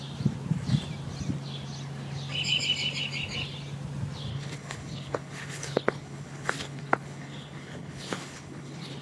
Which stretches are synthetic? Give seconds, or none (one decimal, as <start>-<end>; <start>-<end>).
4.3-9.0